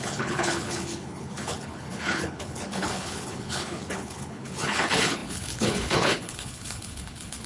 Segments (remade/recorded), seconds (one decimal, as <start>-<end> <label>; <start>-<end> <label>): 0.0-7.5 remade

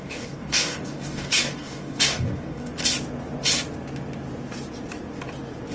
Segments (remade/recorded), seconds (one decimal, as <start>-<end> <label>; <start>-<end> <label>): 0.0-2.7 remade; 2.7-5.7 recorded

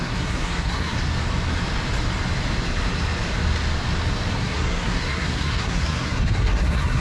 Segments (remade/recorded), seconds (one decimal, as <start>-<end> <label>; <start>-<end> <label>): 0.0-1.0 remade; 1.0-4.3 recorded; 4.3-7.0 remade